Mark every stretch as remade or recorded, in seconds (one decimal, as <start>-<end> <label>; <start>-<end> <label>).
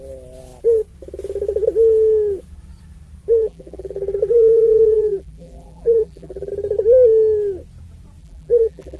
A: 0.0-3.4 recorded; 3.4-6.5 remade; 6.5-8.2 recorded; 8.2-9.0 remade